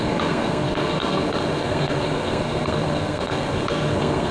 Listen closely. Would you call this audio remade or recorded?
remade